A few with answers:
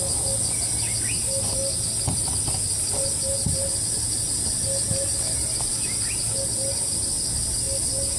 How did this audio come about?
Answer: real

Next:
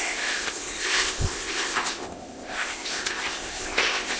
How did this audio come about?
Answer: fake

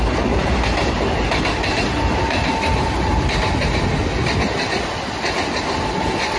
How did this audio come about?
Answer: real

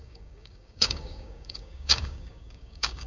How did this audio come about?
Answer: fake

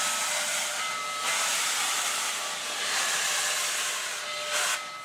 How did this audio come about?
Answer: real